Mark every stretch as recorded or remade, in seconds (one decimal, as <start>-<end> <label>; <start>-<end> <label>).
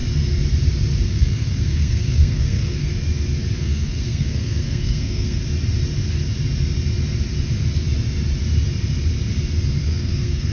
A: 0.0-1.1 recorded; 1.1-2.9 remade; 2.9-3.6 recorded; 3.6-5.4 remade; 5.4-9.8 recorded; 9.8-10.5 remade